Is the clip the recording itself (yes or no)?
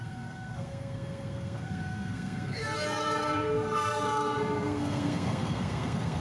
no